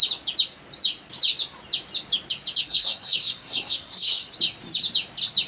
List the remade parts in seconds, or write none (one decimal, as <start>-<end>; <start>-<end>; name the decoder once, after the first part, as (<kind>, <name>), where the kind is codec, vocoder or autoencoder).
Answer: 2.6-4.3 (codec, SNAC)